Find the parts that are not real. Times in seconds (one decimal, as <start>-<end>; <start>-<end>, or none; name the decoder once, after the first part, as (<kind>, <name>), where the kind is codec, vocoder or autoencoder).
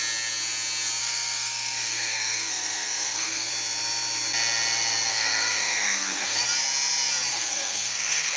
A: 1.0-3.5 (codec, SNAC); 5.1-6.4; 7.3-8.4